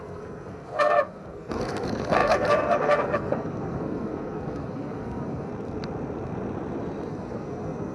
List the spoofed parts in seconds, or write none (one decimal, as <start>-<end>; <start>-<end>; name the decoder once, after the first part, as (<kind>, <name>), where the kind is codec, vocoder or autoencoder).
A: 0.0-5.5 (codec, SNAC); 7.1-7.9